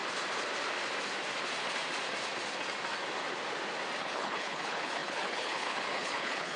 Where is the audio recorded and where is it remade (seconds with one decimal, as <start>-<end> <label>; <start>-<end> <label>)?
0.0-4.0 recorded; 4.0-6.6 remade